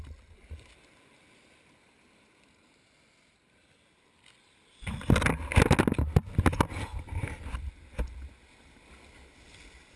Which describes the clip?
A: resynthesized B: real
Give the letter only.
B